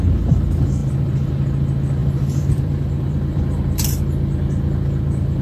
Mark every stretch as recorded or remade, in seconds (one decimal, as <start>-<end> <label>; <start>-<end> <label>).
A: 0.0-2.0 recorded; 2.0-4.0 remade; 4.0-5.4 recorded